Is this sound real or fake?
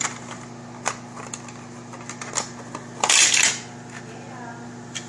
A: real